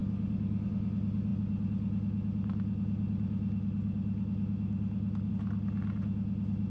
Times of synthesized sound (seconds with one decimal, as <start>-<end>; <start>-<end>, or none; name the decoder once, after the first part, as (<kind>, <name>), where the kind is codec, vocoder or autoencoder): 0.0-0.7 (codec, DAC)